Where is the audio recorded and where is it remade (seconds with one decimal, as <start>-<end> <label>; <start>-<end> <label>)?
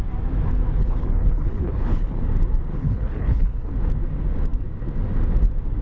0.0-0.8 recorded; 0.8-2.2 remade; 2.2-2.7 recorded; 2.7-3.7 remade; 3.7-5.8 recorded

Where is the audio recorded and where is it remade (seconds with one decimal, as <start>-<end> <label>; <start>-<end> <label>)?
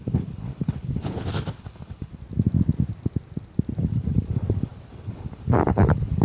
0.0-2.1 remade; 2.1-3.8 recorded; 3.8-6.2 remade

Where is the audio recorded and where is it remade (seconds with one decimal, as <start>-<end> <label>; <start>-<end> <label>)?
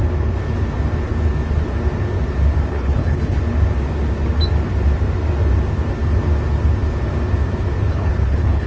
0.0-2.7 recorded; 2.7-3.4 remade; 3.4-7.9 recorded; 7.9-8.7 remade